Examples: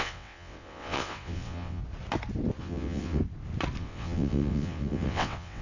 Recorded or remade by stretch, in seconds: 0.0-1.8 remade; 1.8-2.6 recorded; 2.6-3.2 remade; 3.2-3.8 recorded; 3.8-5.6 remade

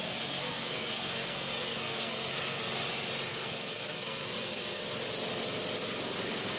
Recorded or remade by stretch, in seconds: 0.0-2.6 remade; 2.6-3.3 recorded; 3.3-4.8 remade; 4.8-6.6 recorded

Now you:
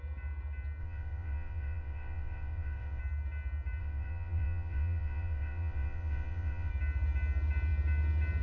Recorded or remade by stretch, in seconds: 0.0-0.8 recorded; 0.8-3.0 remade; 3.0-3.8 recorded; 3.8-6.7 remade; 6.7-8.4 recorded

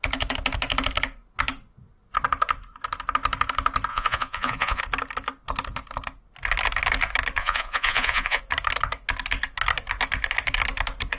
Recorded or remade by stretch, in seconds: 0.0-3.9 recorded; 3.9-4.8 remade; 4.8-7.4 recorded; 7.4-8.4 remade; 8.4-11.2 recorded

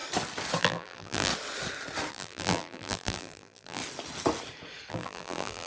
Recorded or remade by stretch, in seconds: 0.0-0.6 recorded; 0.6-1.3 remade; 1.3-2.1 recorded; 2.1-3.8 remade; 3.8-4.9 recorded; 4.9-5.7 remade